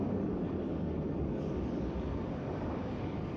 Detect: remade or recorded remade